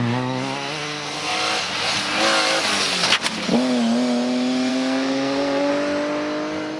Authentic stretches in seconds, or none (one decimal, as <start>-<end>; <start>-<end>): 0.0-4.7; 5.7-6.8